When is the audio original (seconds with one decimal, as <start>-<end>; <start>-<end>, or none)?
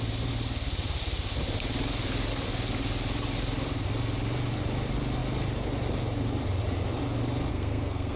0.0-7.5